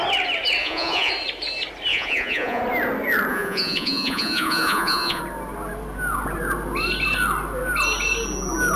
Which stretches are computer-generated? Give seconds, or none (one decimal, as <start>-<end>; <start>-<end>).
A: 0.6-1.1; 1.9-2.6; 3.3-5.2